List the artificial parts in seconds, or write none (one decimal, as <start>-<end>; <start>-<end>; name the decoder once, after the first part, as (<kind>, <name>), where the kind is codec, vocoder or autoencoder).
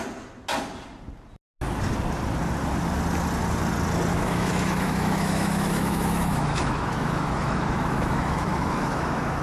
4.1-9.4 (autoencoder, DAC-VAE)